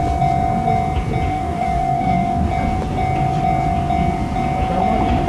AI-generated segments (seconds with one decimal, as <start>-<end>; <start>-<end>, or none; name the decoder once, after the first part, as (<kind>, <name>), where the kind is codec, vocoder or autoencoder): 1.3-2.5 (codec, DAC)

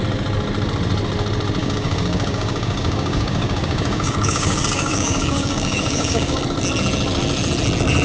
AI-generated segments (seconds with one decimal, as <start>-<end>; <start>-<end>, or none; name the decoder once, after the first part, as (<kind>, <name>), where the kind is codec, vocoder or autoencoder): 1.6-6.4 (codec, DAC)

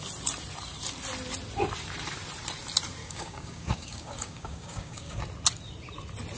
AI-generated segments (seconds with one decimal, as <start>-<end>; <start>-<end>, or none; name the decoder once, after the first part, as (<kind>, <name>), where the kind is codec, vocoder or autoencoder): 3.0-5.2 (codec, DAC)

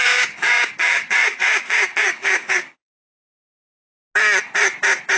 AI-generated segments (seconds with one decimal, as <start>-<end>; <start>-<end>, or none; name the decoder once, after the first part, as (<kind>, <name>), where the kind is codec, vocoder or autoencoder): 0.0-3.7 (codec, DAC)

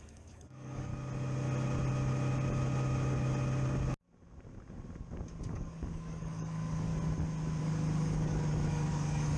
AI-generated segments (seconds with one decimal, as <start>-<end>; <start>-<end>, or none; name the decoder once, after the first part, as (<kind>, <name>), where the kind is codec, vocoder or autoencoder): 0.0-0.9 (codec, DAC); 5.4-6.9; 7.6-9.4

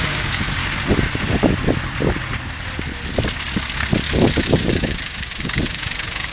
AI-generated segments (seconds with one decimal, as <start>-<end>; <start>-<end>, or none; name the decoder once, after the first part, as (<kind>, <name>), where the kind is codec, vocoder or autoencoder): 0.0-0.6 (codec, DAC); 4.4-6.3

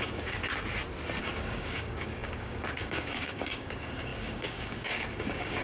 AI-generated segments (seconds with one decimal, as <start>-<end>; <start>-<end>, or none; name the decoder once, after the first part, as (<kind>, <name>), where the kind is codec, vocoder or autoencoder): 0.0-0.4 (codec, DAC); 1.2-5.6

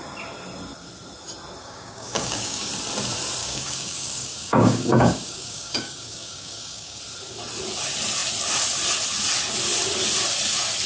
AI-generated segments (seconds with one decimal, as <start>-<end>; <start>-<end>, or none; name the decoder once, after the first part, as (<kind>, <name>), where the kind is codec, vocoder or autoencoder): 1.6-2.7 (codec, DAC); 3.4-7.0